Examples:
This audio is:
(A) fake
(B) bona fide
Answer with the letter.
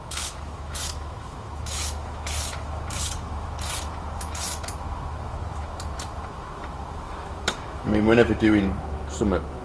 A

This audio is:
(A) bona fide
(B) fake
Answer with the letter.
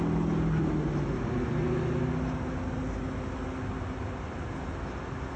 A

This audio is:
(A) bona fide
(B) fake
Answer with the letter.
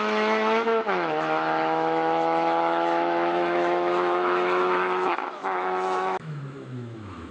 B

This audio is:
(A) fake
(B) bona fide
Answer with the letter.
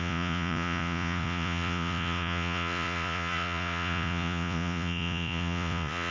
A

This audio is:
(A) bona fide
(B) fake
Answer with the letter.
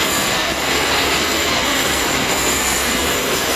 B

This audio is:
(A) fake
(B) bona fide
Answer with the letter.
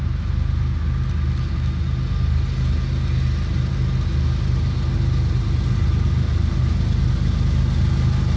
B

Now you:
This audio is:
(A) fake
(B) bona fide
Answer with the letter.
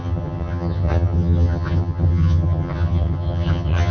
A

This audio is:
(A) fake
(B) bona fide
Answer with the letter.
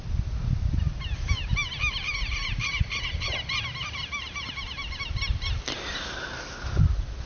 B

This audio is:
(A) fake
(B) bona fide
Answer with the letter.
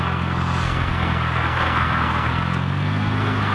A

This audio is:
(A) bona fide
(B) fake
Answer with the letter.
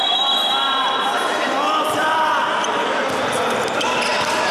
A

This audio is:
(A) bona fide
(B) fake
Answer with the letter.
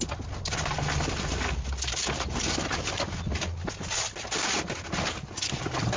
A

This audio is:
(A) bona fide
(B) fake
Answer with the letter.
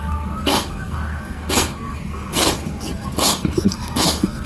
B